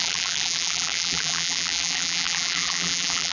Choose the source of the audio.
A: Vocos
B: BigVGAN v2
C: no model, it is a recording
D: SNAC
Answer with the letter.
B